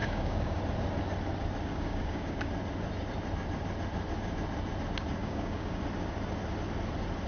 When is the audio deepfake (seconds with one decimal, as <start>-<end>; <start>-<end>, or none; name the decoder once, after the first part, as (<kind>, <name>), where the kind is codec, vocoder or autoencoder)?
0.0-0.6 (codec, DAC); 1.7-2.5; 5.2-5.8